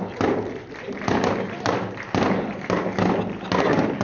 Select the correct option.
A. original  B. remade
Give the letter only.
A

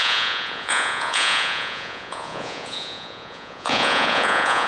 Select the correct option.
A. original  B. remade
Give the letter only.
B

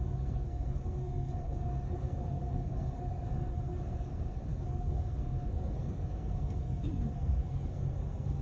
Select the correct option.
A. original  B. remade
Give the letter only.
B